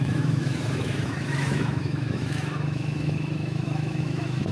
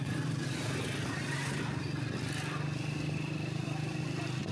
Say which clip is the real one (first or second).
second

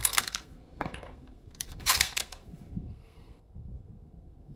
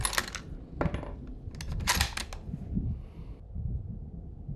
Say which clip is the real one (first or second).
second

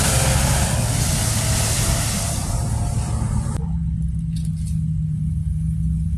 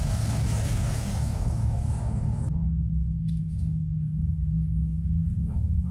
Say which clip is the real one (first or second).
first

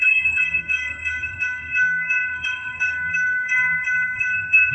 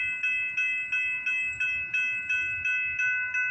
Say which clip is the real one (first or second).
second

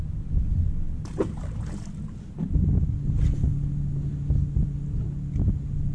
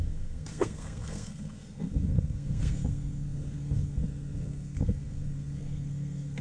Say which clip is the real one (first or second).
first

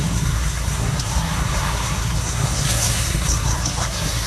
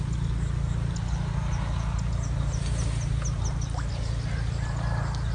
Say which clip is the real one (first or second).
second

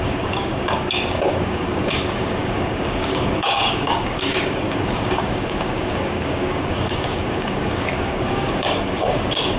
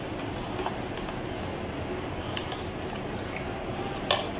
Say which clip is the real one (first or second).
second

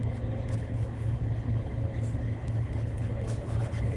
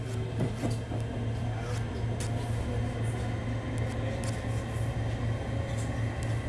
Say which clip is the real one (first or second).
second